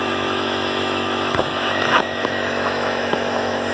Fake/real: fake